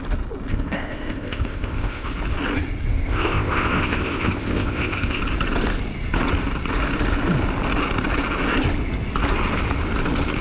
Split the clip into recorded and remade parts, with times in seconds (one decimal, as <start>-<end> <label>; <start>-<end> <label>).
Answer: 0.0-0.5 recorded; 0.5-2.1 remade; 2.1-2.9 recorded; 2.9-5.2 remade; 5.2-10.4 recorded